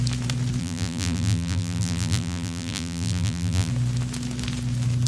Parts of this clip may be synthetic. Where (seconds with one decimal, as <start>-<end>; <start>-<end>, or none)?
0.6-3.7